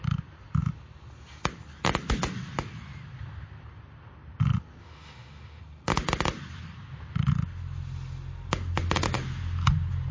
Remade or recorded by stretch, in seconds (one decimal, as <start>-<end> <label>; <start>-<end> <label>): 0.0-4.8 recorded; 4.8-5.6 remade; 5.6-10.1 recorded